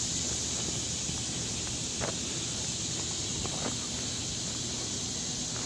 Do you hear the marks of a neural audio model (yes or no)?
no